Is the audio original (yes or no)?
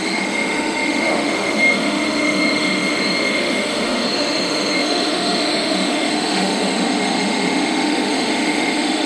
no